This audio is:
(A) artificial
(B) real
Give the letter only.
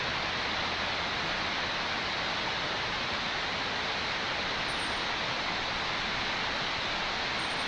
B